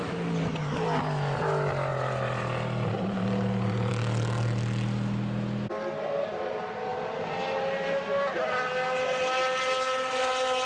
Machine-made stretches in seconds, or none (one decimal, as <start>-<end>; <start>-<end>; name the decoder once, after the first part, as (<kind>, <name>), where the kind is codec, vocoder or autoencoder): 1.9-3.9 (vocoder, BigVGAN v2); 6.9-8.0